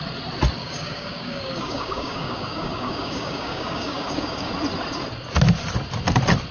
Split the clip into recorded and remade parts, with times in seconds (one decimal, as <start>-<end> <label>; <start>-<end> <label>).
0.0-0.6 recorded; 0.6-4.5 remade; 4.5-6.5 recorded